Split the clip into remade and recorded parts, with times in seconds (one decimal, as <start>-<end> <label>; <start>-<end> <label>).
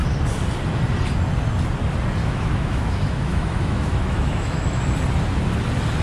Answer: 0.0-2.2 recorded; 2.2-4.8 remade; 4.8-6.0 recorded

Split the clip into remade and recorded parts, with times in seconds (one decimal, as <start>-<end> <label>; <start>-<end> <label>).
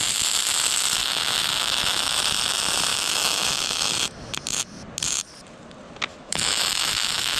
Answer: 0.0-1.0 recorded; 1.0-2.2 remade; 2.2-2.9 recorded; 2.9-3.9 remade; 3.9-6.1 recorded; 6.1-7.4 remade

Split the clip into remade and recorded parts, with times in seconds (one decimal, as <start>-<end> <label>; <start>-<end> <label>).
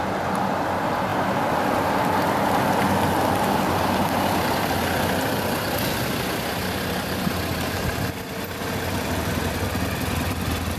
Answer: 0.0-10.8 recorded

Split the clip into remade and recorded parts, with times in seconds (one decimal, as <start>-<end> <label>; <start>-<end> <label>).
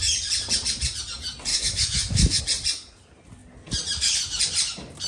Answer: 0.0-1.5 recorded; 1.5-2.4 remade; 2.4-5.1 recorded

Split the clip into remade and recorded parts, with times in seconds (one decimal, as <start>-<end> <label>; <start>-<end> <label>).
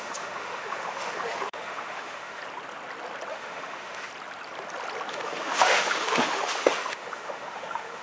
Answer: 0.0-2.4 remade; 2.4-3.3 recorded; 3.3-4.1 remade; 4.1-5.1 recorded; 5.1-8.0 remade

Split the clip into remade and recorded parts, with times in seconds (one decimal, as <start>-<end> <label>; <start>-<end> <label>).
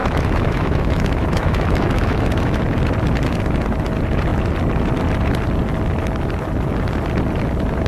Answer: 0.0-2.6 remade; 2.6-7.9 recorded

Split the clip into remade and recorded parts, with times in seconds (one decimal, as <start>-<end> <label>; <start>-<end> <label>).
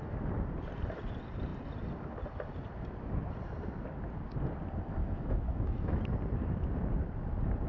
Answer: 0.0-5.0 recorded; 5.0-6.0 remade; 6.0-7.7 recorded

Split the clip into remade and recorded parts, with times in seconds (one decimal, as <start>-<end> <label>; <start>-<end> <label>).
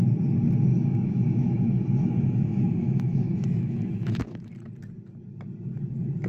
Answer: 0.0-0.7 recorded; 0.7-4.5 remade; 4.5-6.3 recorded